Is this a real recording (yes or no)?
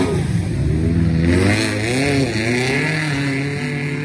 yes